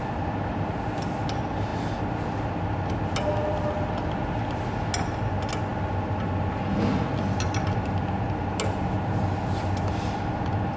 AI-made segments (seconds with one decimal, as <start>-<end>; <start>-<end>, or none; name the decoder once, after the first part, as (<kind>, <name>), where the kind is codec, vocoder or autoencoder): none

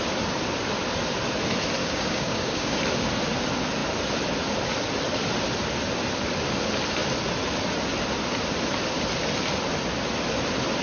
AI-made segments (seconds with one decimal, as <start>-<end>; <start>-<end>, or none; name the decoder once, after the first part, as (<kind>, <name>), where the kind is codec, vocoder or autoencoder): 1.8-2.8 (codec, DAC)

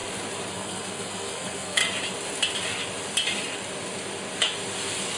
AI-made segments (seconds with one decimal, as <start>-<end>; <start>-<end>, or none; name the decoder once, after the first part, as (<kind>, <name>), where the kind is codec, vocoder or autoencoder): 0.5-1.8 (codec, SNAC)

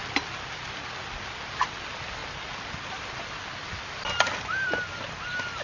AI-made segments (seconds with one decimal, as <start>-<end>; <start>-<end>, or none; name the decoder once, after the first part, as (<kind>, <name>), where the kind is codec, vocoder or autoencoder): none

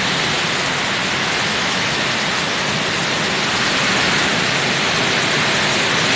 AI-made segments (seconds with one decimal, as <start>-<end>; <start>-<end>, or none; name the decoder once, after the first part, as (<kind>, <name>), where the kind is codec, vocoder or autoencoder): 1.5-2.0 (autoencoder, DAC-VAE)